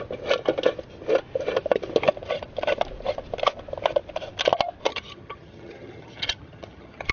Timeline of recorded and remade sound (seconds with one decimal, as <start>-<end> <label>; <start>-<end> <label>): 0.0-4.9 recorded; 4.9-7.1 remade

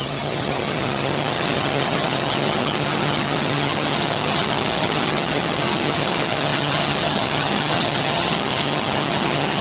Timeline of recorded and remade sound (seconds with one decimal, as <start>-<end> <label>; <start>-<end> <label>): 0.0-9.6 remade

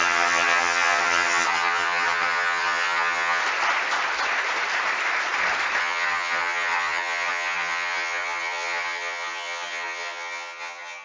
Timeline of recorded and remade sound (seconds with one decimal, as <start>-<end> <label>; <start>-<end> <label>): 0.0-3.4 remade; 3.4-5.8 recorded; 5.8-11.0 remade

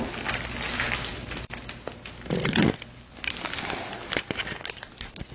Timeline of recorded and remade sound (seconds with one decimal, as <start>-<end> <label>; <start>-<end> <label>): 0.0-5.3 recorded

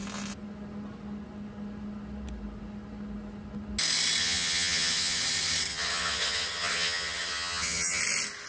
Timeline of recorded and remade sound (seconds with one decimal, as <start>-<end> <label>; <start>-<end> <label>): 0.0-4.2 recorded; 4.2-5.2 remade; 5.2-5.7 recorded; 5.7-8.0 remade; 8.0-8.5 recorded